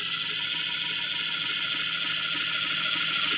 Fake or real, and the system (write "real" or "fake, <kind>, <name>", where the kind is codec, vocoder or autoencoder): real